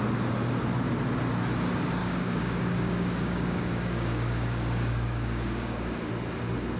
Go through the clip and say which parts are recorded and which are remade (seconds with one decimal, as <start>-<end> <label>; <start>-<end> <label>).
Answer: 0.0-2.0 recorded; 2.0-6.1 remade; 6.1-6.8 recorded

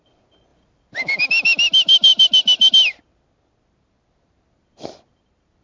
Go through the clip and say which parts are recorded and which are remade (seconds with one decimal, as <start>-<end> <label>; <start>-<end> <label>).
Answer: 0.0-5.6 recorded

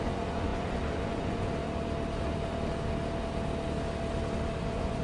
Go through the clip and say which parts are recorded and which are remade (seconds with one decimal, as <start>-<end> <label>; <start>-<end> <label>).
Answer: 0.0-1.6 remade; 1.6-4.6 recorded; 4.6-5.0 remade

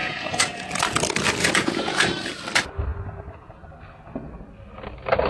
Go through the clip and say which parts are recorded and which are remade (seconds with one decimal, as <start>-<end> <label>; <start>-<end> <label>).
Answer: 0.0-0.7 remade; 0.7-1.4 recorded; 1.4-2.1 remade; 2.1-5.3 recorded